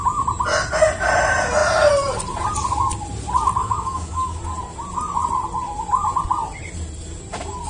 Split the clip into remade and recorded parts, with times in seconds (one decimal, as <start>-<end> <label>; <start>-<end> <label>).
0.0-3.6 recorded; 3.6-4.4 remade; 4.4-7.7 recorded